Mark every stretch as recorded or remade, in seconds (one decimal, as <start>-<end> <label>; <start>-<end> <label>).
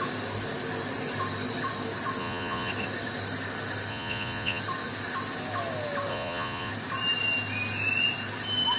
0.0-2.2 recorded; 2.2-2.7 remade; 2.7-3.9 recorded; 3.9-4.6 remade; 4.6-6.1 recorded; 6.1-6.7 remade; 6.7-8.8 recorded